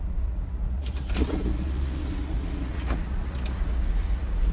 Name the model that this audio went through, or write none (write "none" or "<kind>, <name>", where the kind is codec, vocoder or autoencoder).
vocoder, Vocos